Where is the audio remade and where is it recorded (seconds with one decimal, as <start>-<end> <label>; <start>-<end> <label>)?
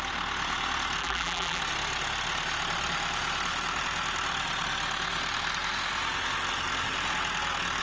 0.0-1.0 recorded; 1.0-1.6 remade; 1.6-7.8 recorded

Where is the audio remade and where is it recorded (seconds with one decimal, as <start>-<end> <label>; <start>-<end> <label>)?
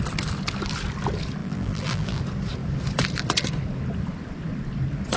0.0-1.4 recorded; 1.4-2.2 remade; 2.2-5.2 recorded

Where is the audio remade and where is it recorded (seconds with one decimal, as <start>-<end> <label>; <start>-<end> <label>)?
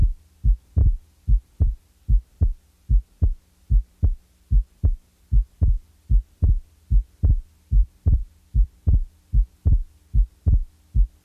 0.0-7.8 recorded; 7.8-9.3 remade; 9.3-11.2 recorded